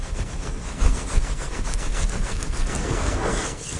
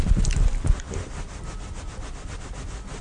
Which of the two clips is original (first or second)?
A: second